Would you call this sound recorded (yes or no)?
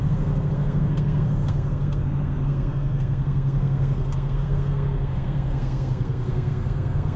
no